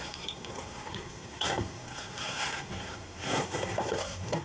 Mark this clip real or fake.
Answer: fake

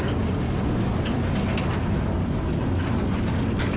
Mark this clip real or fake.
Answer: real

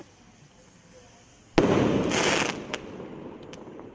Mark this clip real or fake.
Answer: real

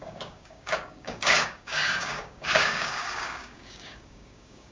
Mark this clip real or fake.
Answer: fake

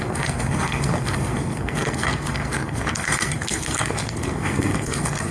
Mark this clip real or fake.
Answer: fake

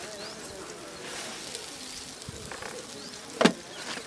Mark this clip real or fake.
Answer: real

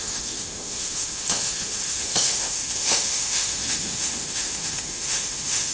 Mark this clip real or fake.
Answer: fake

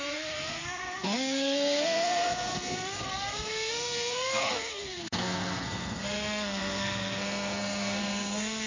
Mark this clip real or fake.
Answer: fake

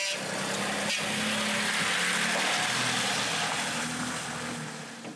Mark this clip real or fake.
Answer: real